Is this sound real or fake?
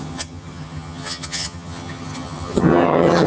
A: fake